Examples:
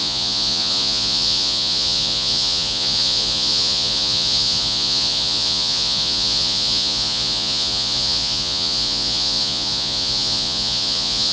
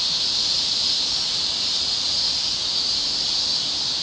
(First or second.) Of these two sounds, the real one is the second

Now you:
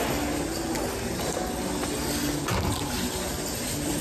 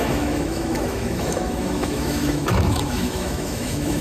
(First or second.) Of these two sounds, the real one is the first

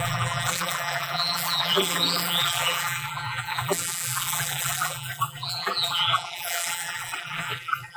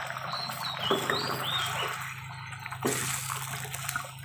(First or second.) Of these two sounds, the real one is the second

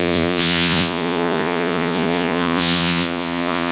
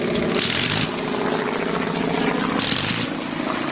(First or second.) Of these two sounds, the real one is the second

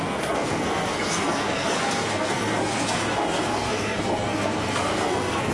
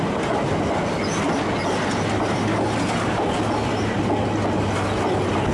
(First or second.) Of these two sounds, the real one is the second